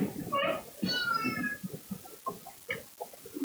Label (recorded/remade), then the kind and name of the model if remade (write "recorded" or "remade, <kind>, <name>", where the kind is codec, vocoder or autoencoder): recorded